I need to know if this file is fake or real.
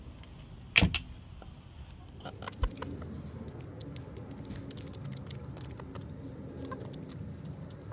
real